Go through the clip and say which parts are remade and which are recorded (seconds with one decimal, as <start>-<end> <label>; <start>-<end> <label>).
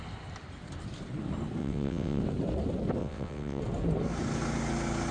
0.0-1.6 recorded; 1.6-2.2 remade; 2.2-3.0 recorded; 3.0-3.6 remade; 3.6-5.1 recorded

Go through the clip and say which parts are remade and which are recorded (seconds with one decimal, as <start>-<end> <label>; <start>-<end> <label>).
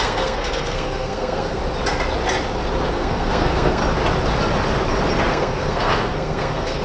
0.0-1.6 remade; 1.6-2.9 recorded; 2.9-3.8 remade; 3.8-5.3 recorded; 5.3-6.8 remade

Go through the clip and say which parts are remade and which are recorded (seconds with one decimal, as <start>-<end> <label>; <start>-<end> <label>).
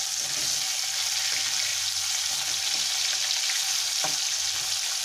0.0-5.0 recorded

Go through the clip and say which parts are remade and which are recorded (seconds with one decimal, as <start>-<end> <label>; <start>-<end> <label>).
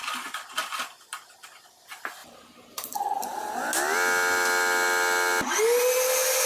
0.0-1.8 remade; 1.8-2.2 recorded; 2.2-3.5 remade; 3.5-6.5 recorded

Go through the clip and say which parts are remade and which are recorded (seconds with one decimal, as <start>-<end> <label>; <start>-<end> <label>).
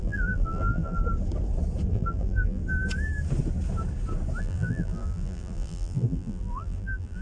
0.0-1.0 remade; 1.0-1.9 recorded; 1.9-2.6 remade; 2.6-4.4 recorded; 4.4-7.2 remade